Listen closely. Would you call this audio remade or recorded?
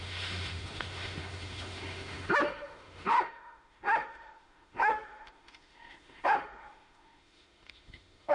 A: remade